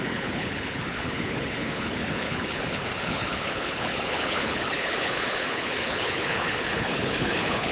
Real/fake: fake